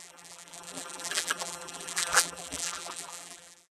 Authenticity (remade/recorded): remade